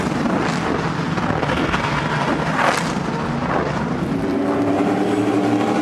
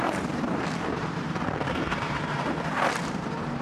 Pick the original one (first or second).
first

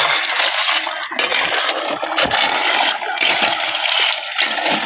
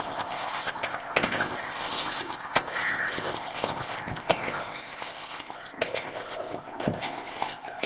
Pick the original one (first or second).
first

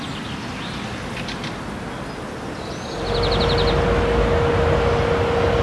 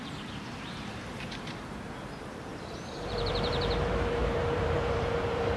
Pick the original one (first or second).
first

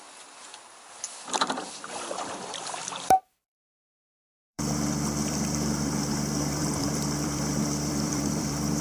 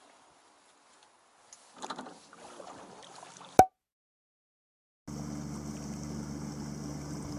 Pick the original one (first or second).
second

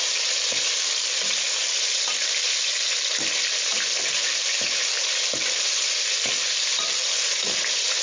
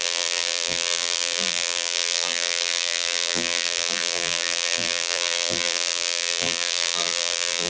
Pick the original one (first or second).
first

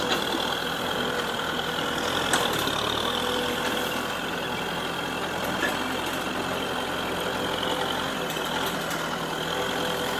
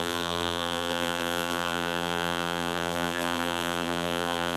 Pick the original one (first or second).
first